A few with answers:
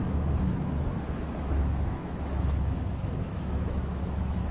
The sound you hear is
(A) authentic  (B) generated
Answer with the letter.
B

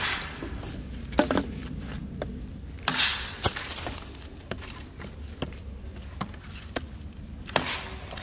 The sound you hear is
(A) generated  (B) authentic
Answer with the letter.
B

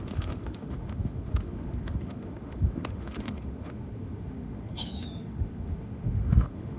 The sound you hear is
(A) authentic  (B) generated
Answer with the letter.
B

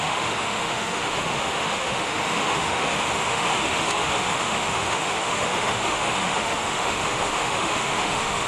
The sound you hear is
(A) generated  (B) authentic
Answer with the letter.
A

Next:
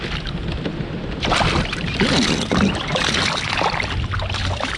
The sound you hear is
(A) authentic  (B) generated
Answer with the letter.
A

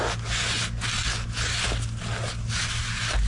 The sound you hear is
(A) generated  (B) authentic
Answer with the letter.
B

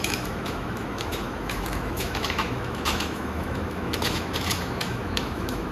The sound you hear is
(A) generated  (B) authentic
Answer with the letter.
A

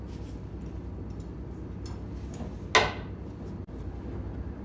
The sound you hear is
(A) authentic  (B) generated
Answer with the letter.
A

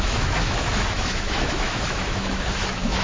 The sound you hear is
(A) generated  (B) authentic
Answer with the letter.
A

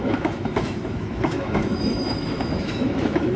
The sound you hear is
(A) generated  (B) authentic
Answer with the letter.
A